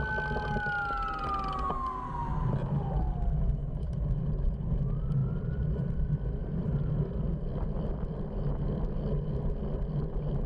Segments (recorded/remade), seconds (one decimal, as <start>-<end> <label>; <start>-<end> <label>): 0.0-2.3 recorded; 2.3-3.0 remade; 3.0-3.6 recorded; 3.6-4.3 remade; 4.3-10.5 recorded